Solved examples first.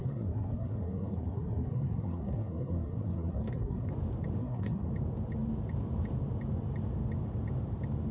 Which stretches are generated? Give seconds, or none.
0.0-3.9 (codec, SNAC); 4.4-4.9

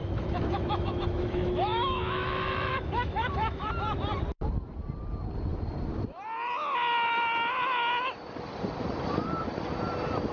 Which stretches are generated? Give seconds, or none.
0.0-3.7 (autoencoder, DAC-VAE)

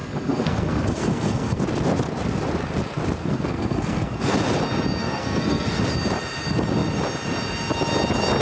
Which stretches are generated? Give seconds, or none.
0.0-1.6 (codec, SNAC); 3.2-4.3; 5.0-5.8

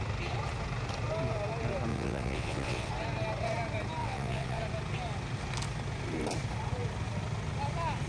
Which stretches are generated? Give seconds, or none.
1.9-2.9 (vocoder, WaveNeXt); 4.0-4.6